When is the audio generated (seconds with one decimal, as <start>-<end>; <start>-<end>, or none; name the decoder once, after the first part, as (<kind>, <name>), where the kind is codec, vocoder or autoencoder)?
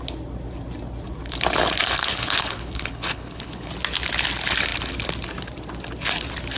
1.8-3.7 (codec, HILCodec)